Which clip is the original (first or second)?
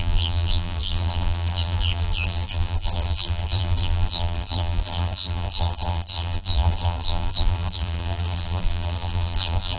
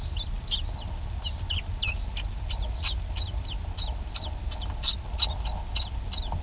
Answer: second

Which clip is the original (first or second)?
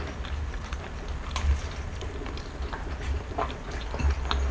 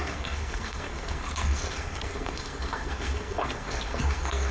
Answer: first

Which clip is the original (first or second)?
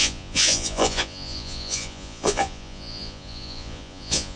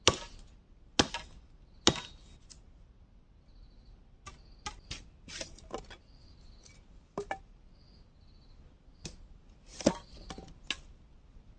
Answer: second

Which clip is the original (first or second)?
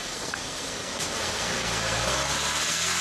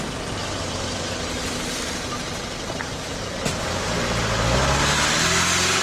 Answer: second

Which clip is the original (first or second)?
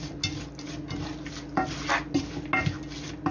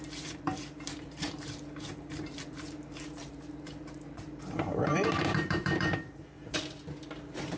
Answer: first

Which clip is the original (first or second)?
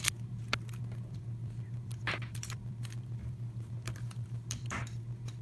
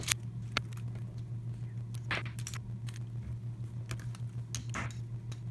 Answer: second